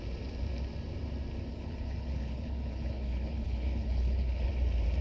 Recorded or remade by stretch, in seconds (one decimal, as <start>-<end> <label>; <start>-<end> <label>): 0.0-1.5 recorded; 1.5-4.5 remade; 4.5-5.0 recorded